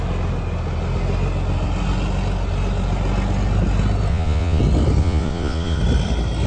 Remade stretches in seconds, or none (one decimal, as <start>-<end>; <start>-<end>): 4.1-4.6; 5.0-5.8